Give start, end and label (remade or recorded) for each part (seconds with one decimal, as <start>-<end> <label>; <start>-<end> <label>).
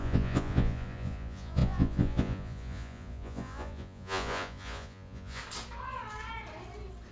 0.0-5.4 remade; 5.4-7.1 recorded